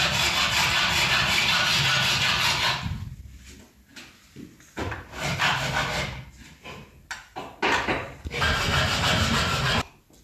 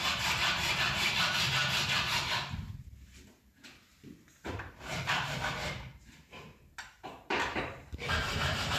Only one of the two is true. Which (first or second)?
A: first